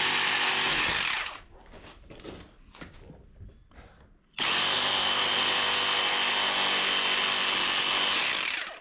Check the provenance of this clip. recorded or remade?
recorded